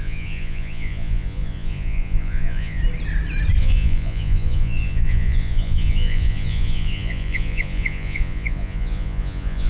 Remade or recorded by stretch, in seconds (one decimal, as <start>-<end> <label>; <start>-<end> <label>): 0.0-2.8 remade; 2.8-3.6 recorded; 3.6-9.7 remade